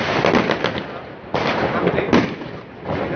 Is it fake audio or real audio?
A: real